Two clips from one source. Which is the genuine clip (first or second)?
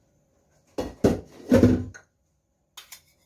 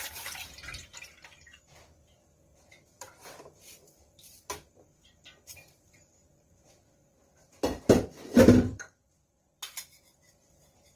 first